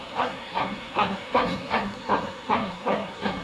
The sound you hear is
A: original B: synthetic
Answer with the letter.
B